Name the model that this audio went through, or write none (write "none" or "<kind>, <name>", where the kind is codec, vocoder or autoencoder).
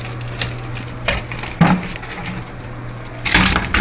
none